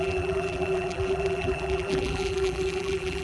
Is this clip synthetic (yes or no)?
yes